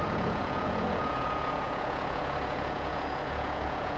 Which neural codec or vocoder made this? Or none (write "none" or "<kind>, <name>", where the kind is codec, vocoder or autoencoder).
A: vocoder, Vocos